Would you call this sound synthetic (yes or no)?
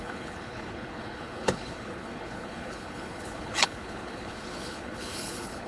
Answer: yes